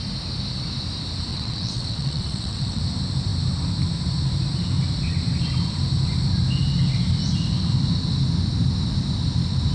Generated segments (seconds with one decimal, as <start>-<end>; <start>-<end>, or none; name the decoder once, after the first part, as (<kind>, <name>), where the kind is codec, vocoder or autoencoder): 1.3-2.8 (vocoder, WaveNeXt)